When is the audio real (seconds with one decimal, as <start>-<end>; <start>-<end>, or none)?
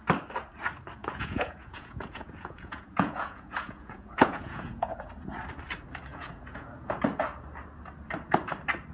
0.0-1.0; 5.1-6.1; 7.0-8.9